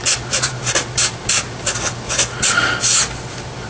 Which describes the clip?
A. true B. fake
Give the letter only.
A